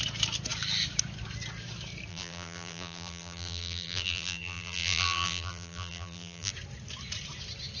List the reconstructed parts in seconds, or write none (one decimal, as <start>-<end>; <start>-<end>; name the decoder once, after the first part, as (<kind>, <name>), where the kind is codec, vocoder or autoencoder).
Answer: 2.1-6.5 (vocoder, BigVGAN v2)